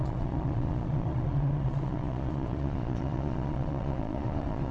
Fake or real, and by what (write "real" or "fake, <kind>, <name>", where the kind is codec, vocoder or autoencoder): fake, vocoder, Vocos